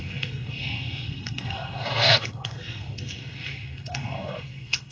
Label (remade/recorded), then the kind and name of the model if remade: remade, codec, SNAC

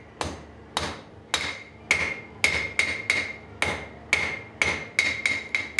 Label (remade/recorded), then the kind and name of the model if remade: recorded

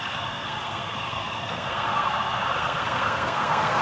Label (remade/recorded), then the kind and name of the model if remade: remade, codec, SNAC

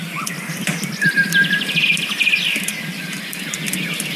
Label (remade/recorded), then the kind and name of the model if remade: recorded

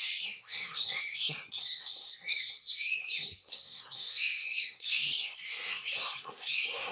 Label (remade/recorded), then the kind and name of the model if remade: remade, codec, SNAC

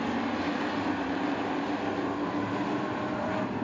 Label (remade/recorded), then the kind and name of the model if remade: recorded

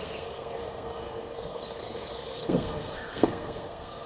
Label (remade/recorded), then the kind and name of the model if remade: remade, codec, SNAC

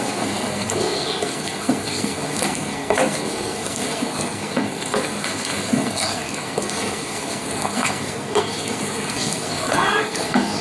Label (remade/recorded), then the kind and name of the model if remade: remade, codec, SNAC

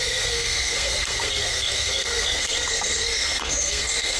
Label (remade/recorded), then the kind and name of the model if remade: remade, codec, SNAC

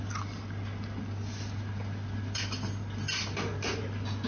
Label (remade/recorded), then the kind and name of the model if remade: recorded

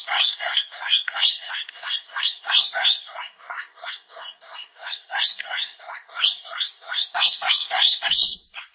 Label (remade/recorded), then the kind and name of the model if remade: remade, codec, SNAC